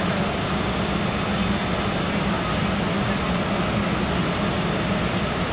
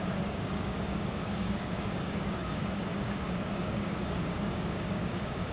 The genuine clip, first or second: first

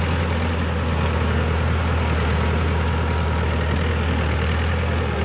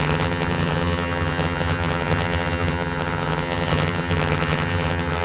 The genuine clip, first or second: first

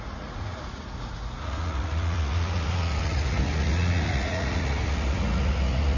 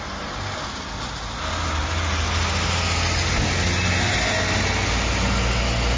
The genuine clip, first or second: second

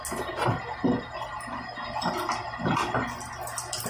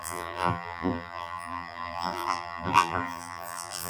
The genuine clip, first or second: first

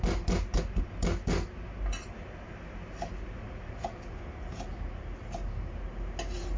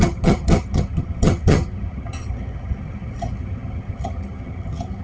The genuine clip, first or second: first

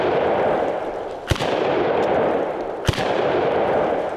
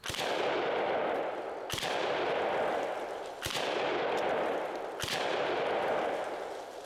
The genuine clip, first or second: second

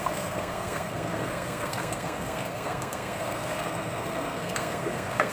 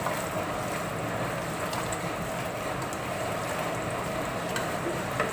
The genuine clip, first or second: second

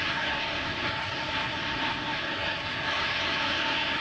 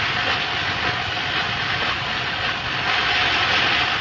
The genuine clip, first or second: second